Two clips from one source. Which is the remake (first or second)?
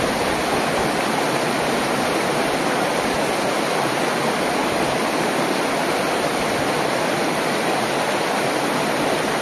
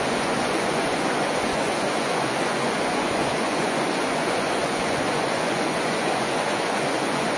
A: second